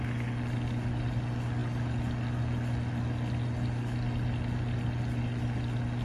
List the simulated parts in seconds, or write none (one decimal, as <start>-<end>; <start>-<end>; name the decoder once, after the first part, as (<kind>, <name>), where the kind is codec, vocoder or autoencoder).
none